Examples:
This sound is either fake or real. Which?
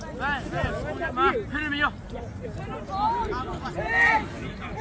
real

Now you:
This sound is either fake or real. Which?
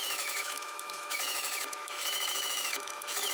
fake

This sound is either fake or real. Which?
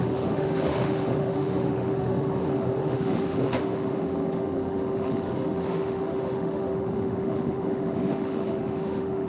fake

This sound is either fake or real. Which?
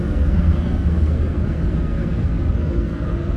fake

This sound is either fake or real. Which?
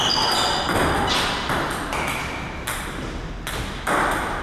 fake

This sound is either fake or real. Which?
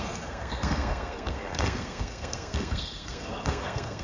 fake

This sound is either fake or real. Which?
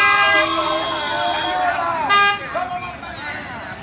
real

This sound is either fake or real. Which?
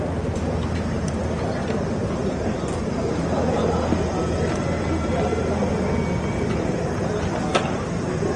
real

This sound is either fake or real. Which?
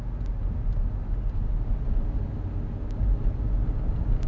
real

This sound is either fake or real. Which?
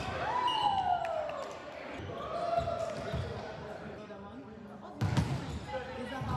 real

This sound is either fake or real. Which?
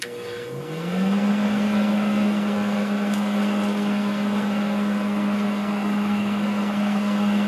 fake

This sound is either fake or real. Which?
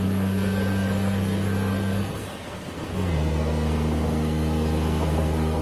fake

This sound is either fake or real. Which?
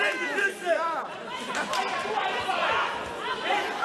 real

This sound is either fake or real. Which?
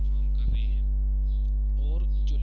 real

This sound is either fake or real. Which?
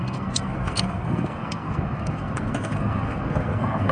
fake